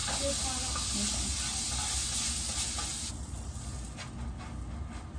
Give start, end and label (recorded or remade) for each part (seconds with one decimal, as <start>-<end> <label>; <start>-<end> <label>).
0.0-5.2 recorded